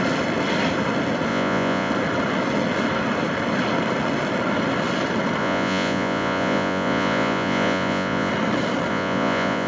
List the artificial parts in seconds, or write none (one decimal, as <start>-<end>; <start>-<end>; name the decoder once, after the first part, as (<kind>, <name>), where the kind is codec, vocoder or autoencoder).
1.3-1.9 (vocoder, Vocos); 5.4-8.3; 8.9-9.7